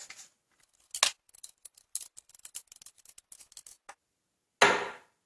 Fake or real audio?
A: real